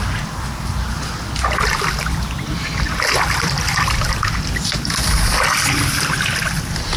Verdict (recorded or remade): recorded